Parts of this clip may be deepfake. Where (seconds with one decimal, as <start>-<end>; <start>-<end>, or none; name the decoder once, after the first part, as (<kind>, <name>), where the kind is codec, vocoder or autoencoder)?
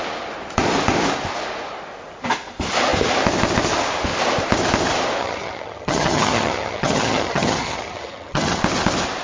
5.2-8.6 (vocoder, HiFi-GAN)